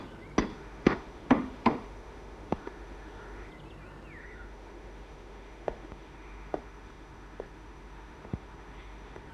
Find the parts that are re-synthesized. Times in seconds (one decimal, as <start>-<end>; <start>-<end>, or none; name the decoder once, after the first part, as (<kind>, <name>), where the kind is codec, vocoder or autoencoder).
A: 0.5-3.5 (autoencoder, DAC-VAE); 4.2-9.3